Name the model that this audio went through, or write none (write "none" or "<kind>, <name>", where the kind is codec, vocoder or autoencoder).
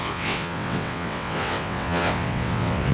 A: vocoder, WaveNeXt